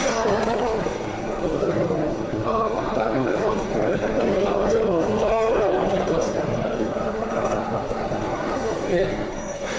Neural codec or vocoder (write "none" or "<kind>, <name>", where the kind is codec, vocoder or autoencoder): codec, SNAC